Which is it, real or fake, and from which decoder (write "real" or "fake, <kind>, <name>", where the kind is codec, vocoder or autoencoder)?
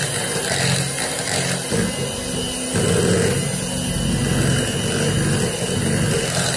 real